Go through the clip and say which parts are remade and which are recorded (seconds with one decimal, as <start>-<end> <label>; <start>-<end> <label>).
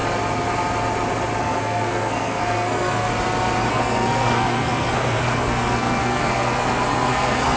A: 0.0-1.4 recorded; 1.4-3.1 remade; 3.1-3.7 recorded; 3.7-7.6 remade